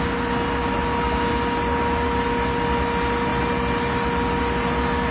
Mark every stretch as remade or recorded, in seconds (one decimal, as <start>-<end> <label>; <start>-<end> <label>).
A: 0.0-5.1 recorded